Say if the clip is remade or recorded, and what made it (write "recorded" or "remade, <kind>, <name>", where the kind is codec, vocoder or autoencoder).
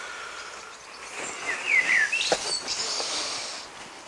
recorded